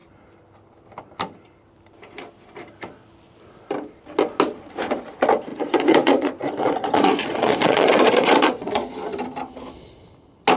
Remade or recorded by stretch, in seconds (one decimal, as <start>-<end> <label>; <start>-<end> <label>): 0.0-5.5 recorded; 5.5-8.9 remade; 8.9-10.6 recorded

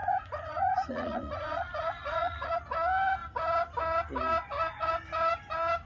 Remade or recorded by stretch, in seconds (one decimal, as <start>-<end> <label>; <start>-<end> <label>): 0.0-2.5 remade; 2.5-5.9 recorded

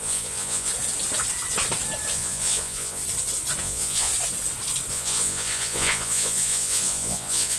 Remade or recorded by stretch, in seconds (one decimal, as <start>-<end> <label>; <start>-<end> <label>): 0.0-0.7 remade; 0.7-2.1 recorded; 2.1-3.0 remade; 3.0-3.6 recorded; 3.6-4.1 remade; 4.1-4.9 recorded; 4.9-7.6 remade

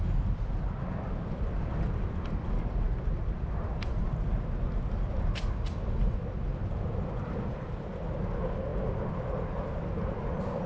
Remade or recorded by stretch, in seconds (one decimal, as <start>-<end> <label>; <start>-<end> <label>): 0.0-10.7 recorded

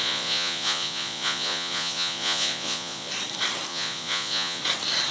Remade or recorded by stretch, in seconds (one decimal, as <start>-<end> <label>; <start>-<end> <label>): 0.0-3.1 remade; 3.1-3.7 recorded; 3.7-4.6 remade; 4.6-5.1 recorded

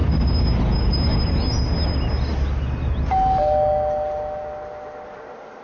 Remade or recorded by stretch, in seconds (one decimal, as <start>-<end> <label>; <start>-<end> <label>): 0.0-5.6 recorded